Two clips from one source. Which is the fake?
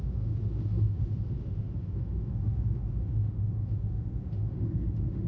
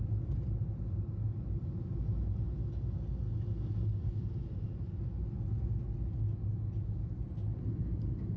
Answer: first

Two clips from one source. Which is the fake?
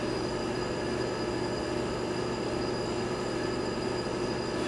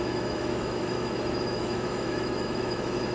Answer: second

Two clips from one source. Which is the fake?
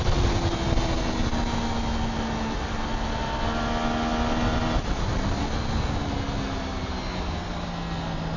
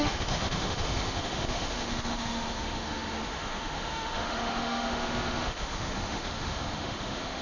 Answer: second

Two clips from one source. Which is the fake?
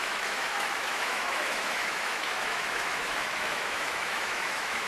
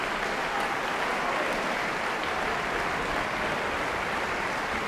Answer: first